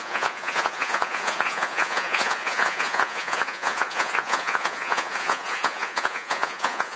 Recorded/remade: remade